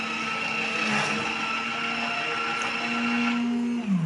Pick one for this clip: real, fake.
real